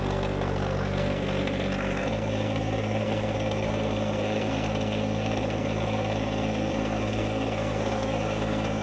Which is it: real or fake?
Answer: fake